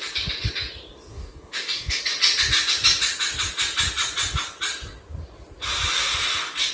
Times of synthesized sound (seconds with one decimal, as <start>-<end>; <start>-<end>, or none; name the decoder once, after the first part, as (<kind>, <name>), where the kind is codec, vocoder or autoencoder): 1.1-2.0 (codec, DAC)